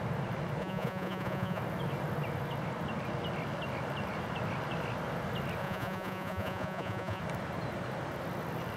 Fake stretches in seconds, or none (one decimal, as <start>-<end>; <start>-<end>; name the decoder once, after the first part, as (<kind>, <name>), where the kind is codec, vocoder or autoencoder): 0.6-1.6 (vocoder, Vocos); 5.6-7.2